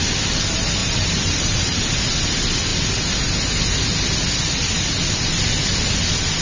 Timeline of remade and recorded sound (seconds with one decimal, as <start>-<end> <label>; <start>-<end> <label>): 0.0-0.8 recorded; 0.8-1.8 remade; 1.8-6.4 recorded